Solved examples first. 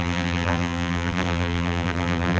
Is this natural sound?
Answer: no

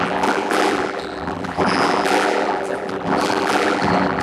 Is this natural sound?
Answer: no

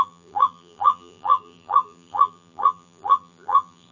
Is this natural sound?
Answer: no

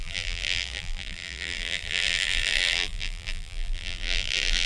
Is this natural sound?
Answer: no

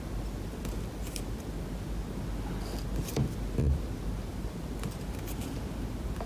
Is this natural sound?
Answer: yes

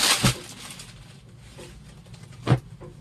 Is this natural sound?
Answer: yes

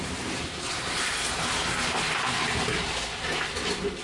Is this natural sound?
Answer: yes